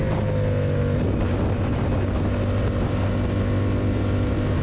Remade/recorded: recorded